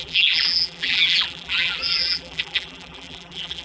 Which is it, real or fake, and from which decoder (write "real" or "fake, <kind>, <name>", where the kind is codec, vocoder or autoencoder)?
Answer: fake, vocoder, BigVGAN v2